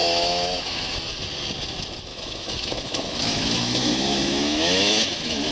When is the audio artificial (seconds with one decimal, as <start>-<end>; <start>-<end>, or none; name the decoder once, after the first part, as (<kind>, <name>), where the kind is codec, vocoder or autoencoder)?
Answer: 0.0-0.9 (autoencoder, DAC-VAE); 2.1-5.5